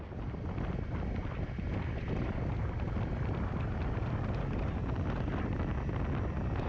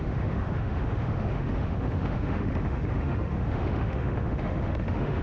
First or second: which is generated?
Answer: second